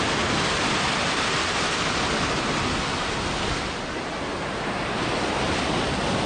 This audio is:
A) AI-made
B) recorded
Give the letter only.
B